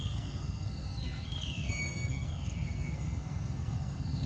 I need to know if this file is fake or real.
fake